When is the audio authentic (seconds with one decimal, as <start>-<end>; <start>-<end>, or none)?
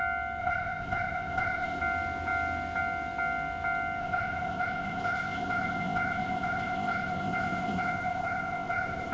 0.0-0.4; 1.8-4.0